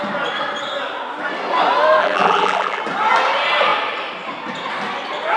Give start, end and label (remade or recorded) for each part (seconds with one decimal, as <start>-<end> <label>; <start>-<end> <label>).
0.0-2.0 recorded; 2.0-2.8 remade; 2.8-5.4 recorded